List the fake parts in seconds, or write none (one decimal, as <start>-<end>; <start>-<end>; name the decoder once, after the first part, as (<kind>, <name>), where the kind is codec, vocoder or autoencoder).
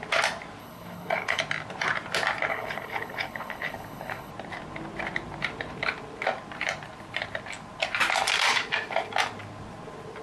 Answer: 0.6-1.4 (codec, HILCodec); 2.5-4.3